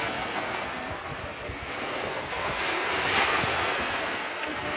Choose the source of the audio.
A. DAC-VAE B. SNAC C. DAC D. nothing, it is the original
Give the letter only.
B